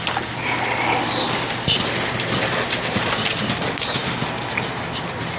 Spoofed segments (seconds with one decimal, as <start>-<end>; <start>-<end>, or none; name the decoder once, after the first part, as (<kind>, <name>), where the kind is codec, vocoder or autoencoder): none